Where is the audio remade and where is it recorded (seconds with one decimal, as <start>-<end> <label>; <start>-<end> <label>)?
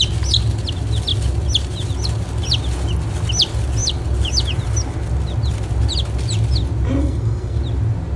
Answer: 0.0-7.0 recorded; 7.0-7.6 remade; 7.6-8.2 recorded